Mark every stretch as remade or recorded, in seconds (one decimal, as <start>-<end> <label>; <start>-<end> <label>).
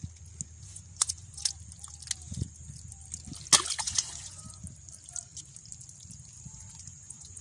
0.0-0.6 recorded; 0.6-1.4 remade; 1.4-3.8 recorded; 3.8-4.6 remade; 4.6-6.8 recorded; 6.8-7.4 remade